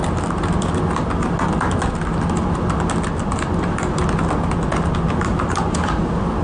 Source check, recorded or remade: recorded